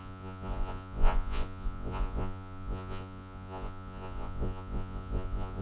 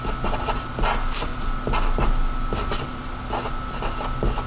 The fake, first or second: first